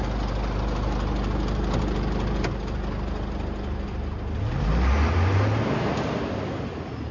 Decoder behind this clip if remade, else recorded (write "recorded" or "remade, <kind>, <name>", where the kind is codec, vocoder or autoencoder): recorded